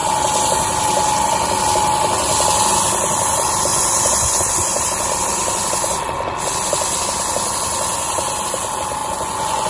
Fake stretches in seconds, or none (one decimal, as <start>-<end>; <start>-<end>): 3.7-4.8; 9.0-9.7